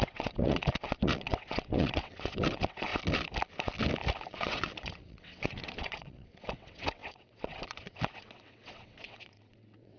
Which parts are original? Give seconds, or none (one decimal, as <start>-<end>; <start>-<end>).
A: 2.9-4.3